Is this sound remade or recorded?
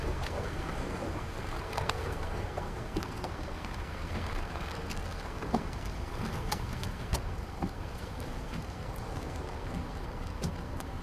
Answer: remade